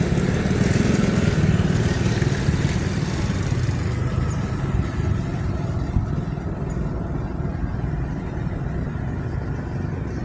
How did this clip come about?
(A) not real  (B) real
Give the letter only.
B